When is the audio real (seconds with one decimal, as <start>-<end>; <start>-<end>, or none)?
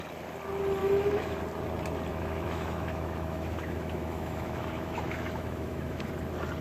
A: 0.0-0.8; 1.4-2.1; 6.1-6.6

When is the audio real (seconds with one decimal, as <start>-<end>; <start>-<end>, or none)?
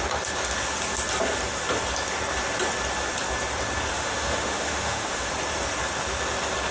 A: 0.0-3.9; 5.3-6.7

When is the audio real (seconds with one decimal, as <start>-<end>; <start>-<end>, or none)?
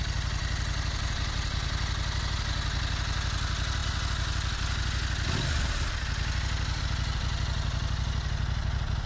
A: 0.0-9.1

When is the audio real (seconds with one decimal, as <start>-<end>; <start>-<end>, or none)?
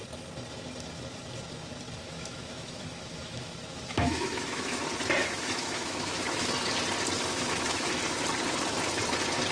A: 0.0-2.0; 4.8-5.2; 6.5-7.3; 8.0-9.5